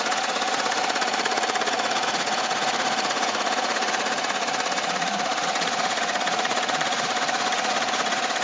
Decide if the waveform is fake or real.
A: fake